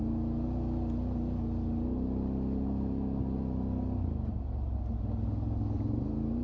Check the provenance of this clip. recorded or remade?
recorded